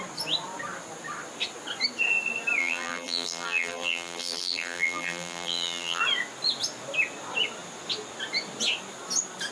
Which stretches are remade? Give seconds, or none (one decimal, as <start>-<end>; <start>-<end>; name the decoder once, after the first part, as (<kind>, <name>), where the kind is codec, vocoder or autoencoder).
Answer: 2.6-6.0 (vocoder, BigVGAN v2)